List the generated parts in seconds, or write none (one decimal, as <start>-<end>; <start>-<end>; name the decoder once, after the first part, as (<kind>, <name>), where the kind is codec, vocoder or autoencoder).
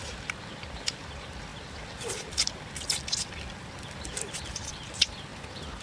0.0-5.8 (vocoder, BigVGAN v2)